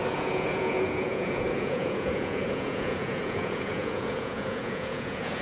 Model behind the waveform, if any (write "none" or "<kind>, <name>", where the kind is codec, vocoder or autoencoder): vocoder, Vocos